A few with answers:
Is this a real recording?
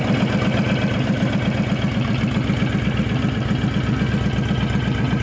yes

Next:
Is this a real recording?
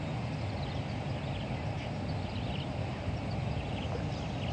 yes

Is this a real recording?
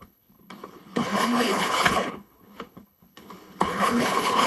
no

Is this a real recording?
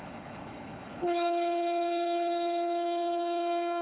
no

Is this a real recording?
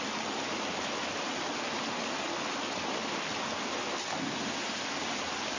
yes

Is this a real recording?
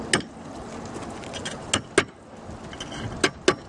yes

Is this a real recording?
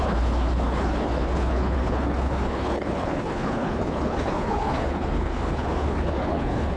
no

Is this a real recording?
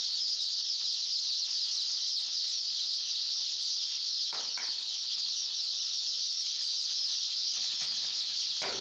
no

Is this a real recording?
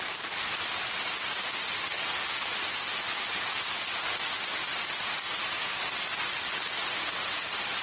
yes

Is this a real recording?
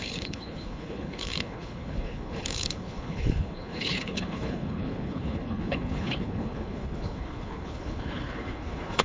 no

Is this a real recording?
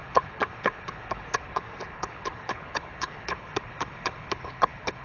no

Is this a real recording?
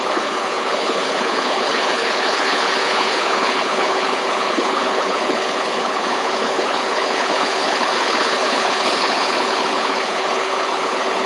no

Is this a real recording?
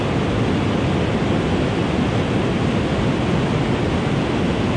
yes